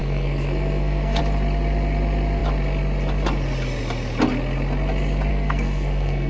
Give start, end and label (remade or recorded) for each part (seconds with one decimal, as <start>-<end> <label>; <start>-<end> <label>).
0.0-1.2 remade; 1.2-5.3 recorded; 5.3-6.3 remade